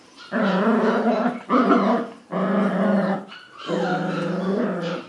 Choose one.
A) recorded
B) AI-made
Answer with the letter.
A